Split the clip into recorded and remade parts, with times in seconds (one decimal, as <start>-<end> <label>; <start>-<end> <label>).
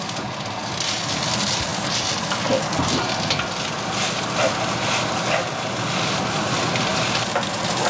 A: 0.0-7.9 recorded